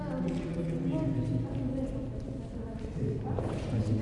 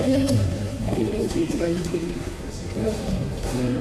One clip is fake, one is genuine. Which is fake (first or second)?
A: second